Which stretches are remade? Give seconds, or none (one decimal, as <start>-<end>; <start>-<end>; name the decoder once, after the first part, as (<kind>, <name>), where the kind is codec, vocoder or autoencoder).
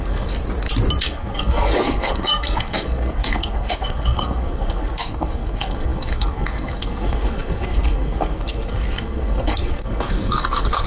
0.0-0.4 (codec, SNAC); 1.0-10.9